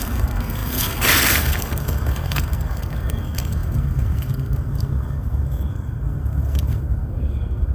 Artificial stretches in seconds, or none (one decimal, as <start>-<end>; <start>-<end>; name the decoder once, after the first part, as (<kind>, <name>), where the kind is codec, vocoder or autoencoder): 0.0-7.7 (codec, SNAC)